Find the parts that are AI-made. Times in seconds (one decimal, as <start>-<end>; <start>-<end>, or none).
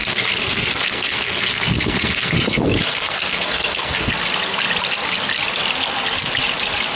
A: 0.0-4.1